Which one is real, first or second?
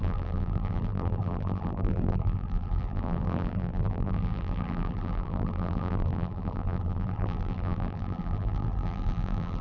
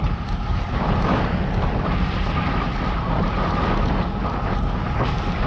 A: second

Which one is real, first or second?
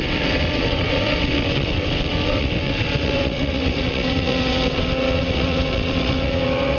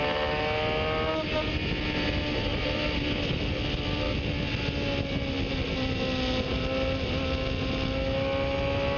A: second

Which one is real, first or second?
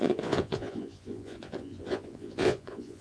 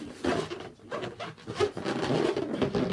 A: second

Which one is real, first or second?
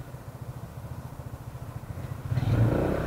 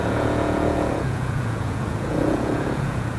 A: first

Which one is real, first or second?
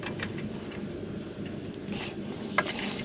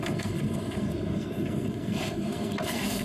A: first